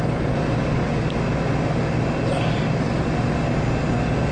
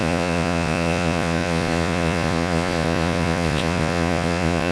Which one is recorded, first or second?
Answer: first